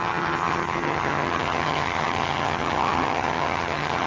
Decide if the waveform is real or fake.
fake